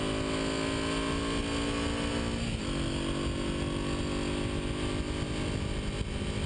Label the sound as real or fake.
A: real